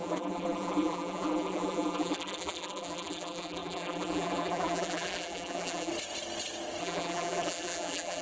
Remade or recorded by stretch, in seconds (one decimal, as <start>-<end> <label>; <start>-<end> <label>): 0.0-5.9 remade; 5.9-6.8 recorded; 6.8-8.2 remade